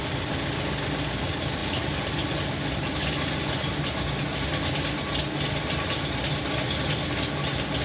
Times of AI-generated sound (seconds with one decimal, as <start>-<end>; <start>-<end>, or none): none